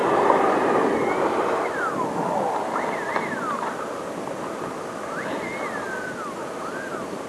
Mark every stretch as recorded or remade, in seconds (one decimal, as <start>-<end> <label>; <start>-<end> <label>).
0.0-7.3 recorded